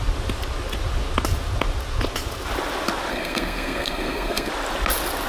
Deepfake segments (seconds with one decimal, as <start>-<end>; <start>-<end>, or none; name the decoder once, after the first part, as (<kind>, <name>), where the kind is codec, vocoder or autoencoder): 3.1-4.5 (codec, SNAC)